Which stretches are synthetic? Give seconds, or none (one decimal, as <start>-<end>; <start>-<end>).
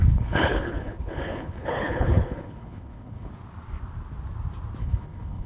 0.0-3.3; 4.8-5.5